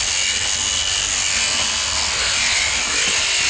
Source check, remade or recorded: recorded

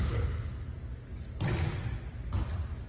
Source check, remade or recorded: recorded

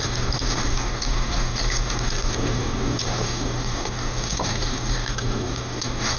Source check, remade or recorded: remade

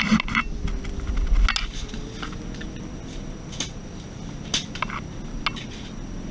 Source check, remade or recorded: recorded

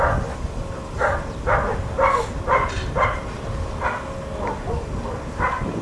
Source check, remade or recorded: recorded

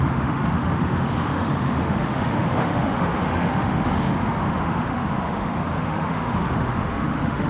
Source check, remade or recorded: remade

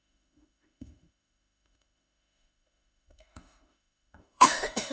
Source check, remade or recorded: remade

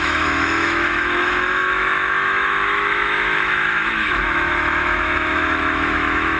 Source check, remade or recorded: remade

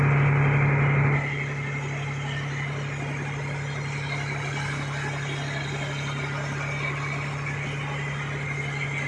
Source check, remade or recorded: recorded